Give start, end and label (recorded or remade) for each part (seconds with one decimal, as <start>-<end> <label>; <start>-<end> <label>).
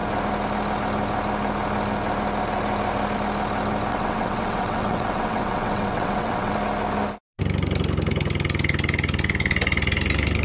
0.0-3.9 recorded; 3.9-6.5 remade; 6.5-10.4 recorded